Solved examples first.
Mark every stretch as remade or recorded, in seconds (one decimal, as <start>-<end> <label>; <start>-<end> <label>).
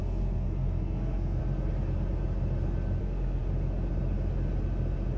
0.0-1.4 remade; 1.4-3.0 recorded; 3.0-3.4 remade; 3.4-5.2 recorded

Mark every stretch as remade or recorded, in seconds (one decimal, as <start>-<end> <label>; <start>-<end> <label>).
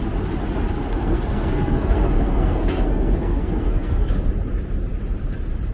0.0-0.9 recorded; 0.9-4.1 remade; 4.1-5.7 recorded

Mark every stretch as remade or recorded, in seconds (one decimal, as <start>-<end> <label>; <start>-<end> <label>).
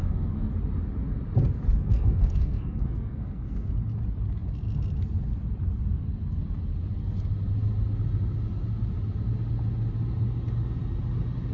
0.0-0.5 remade; 0.5-1.8 recorded; 1.8-3.7 remade; 3.7-11.5 recorded